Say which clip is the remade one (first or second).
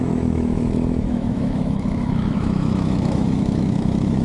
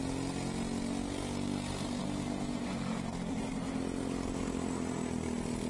first